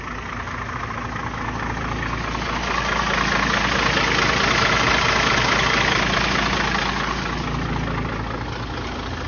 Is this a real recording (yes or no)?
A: yes